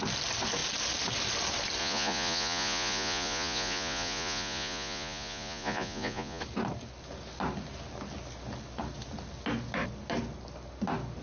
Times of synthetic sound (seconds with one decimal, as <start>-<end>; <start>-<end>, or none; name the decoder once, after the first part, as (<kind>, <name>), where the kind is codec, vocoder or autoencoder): 1.8-6.4 (vocoder, Vocos)